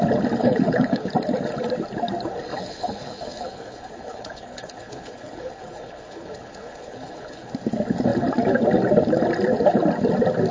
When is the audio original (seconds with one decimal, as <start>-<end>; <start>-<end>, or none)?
0.0-0.4; 1.1-2.5; 7.5-10.5